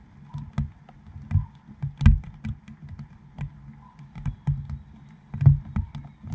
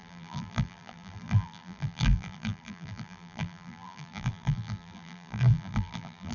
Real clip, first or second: first